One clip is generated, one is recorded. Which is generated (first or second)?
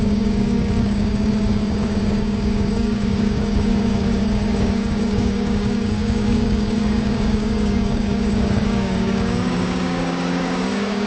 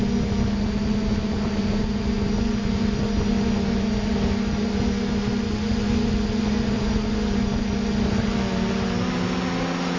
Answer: first